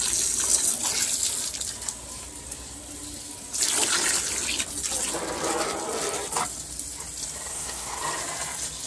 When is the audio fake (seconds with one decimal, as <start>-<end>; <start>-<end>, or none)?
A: 7.5-8.0